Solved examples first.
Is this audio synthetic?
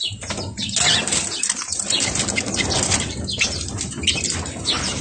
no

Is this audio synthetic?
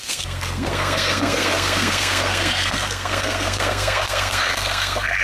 yes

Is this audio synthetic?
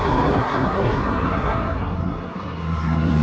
yes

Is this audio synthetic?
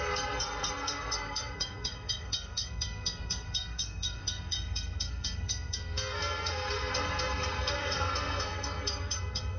yes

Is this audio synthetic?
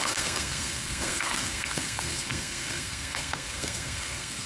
yes